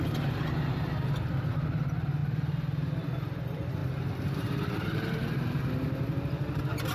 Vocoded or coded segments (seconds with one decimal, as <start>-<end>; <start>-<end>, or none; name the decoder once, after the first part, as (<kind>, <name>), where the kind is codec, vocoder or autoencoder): 2.2-3.0 (vocoder, BigVGAN v2); 3.8-5.3